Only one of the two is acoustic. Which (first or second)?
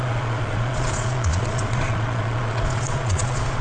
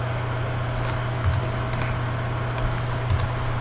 second